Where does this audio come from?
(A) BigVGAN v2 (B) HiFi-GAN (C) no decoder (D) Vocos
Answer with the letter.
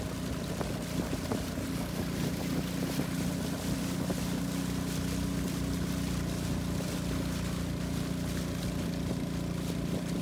C